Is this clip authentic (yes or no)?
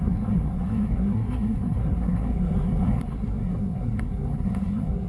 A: no